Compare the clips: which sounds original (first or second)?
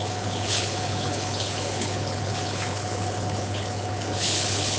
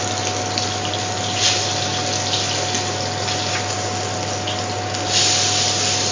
second